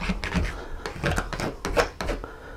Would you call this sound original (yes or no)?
yes